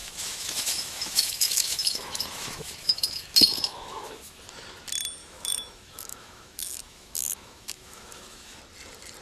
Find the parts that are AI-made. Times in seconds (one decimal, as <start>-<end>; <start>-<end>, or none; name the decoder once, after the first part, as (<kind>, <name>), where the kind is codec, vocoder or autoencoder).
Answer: 0.0-4.4 (autoencoder, DAC-VAE); 5.2-8.6

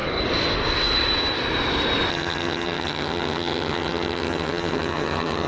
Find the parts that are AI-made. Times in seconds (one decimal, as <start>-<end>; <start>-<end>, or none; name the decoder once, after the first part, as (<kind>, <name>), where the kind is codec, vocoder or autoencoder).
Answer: 2.1-5.5 (vocoder, HiFi-GAN)

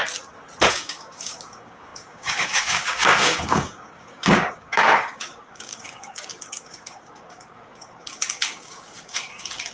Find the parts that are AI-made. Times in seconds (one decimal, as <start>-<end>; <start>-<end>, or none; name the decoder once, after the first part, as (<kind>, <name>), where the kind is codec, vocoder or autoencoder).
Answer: 0.7-9.7 (codec, DAC)

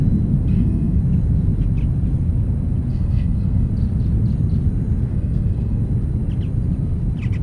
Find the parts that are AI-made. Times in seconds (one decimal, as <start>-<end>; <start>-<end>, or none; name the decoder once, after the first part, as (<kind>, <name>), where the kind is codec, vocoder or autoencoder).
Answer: 0.5-1.0 (codec, SNAC); 2.9-3.7; 5.1-5.8

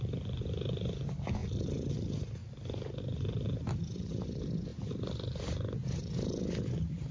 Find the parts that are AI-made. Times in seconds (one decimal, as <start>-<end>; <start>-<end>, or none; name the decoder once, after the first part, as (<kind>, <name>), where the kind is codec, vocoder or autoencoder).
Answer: 2.4-3.0 (vocoder, BigVGAN v2); 4.7-7.1

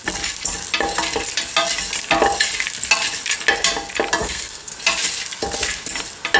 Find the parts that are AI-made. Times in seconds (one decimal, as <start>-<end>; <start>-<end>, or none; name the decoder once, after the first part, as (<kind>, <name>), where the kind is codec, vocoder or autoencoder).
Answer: 4.2-4.7 (codec, SNAC)

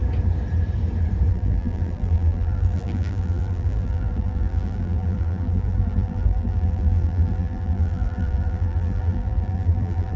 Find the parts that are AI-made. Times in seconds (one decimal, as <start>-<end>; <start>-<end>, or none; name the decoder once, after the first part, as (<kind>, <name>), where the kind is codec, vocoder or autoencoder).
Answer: 1.3-10.2 (vocoder, BigVGAN v2)